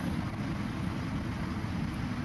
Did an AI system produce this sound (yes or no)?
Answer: no